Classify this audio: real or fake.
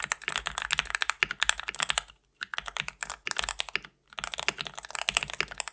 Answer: real